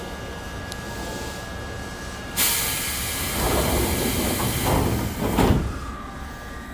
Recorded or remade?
recorded